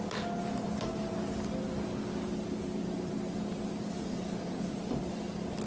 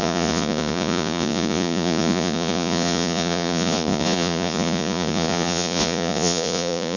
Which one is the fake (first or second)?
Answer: second